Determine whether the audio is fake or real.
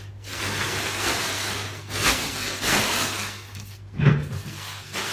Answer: fake